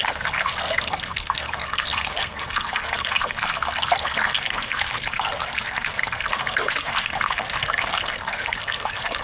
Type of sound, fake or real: fake